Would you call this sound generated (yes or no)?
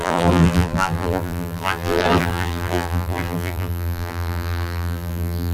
yes